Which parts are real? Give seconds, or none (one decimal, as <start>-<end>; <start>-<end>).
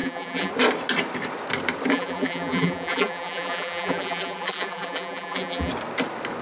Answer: 0.5-1.9; 5.7-6.4